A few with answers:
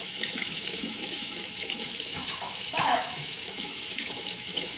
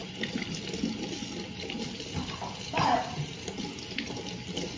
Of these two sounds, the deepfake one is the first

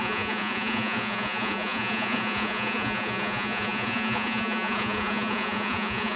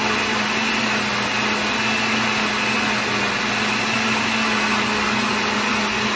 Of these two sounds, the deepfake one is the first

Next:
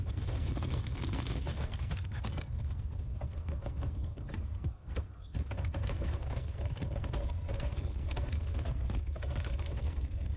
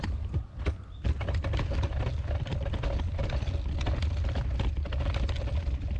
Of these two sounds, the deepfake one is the first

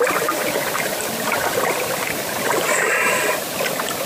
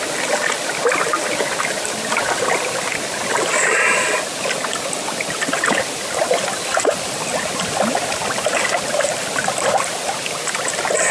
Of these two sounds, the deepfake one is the first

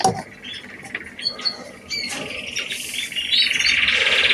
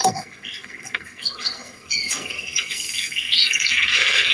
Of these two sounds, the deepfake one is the second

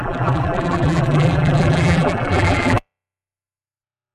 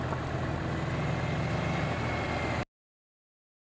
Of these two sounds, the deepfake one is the first